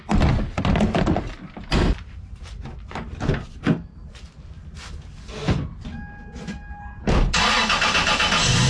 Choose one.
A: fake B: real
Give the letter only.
B